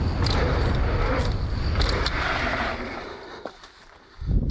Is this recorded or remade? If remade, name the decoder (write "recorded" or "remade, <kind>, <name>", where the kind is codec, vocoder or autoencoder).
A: remade, vocoder, BigVGAN v2